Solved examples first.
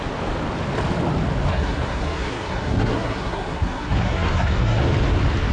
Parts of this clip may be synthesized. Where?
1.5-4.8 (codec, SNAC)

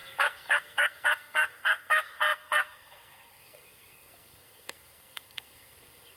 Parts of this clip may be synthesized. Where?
0.0-6.2 (codec, SNAC)

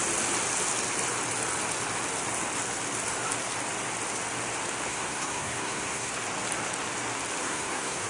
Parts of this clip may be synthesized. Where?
4.9-6.1 (codec, SNAC); 7.4-8.1

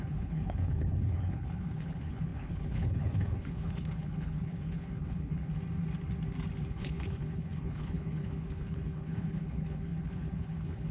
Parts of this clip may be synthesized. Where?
0.0-5.5 (codec, HILCodec); 6.7-10.9

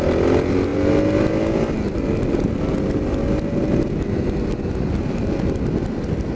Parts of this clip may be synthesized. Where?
none

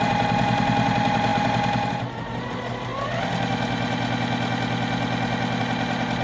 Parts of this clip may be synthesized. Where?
none

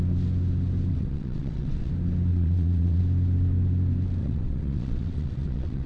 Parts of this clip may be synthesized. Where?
0.9-1.9 (vocoder, WaveNeXt); 2.3-3.0; 4.2-5.9